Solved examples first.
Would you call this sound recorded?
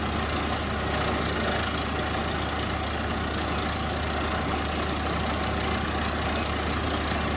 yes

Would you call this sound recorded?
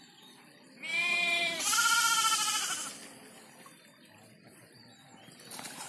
yes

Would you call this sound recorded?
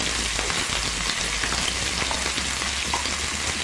yes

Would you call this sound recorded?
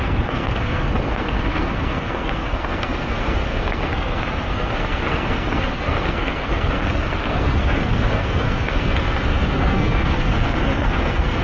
no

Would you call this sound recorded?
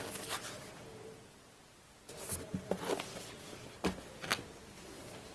yes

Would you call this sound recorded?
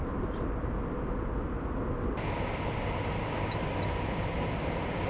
yes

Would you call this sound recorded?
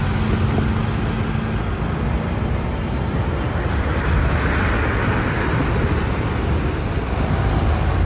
yes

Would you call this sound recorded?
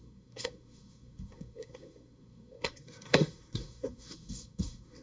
no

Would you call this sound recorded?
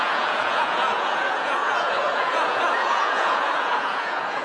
no